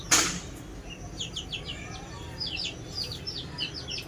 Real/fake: real